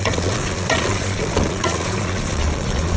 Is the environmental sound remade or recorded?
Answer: remade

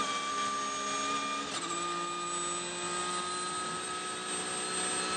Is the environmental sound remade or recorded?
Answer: recorded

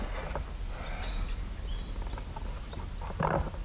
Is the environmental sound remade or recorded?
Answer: recorded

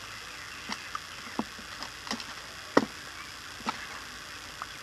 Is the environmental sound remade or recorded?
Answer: recorded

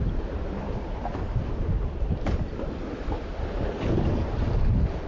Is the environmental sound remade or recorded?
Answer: recorded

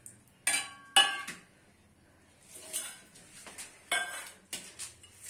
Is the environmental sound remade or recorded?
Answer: recorded